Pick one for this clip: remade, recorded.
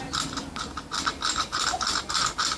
recorded